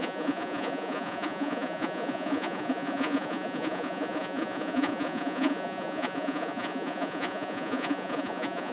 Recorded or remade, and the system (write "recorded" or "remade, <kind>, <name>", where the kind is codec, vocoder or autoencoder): remade, vocoder, Vocos